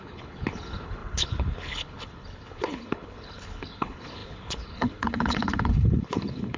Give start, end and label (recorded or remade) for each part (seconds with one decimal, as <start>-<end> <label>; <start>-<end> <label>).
0.0-6.6 remade